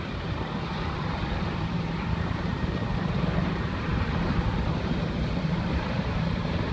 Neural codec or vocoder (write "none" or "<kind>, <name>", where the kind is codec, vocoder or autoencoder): vocoder, BigVGAN v2